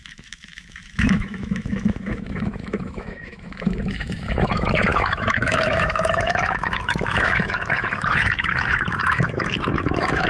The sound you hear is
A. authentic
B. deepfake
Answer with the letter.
B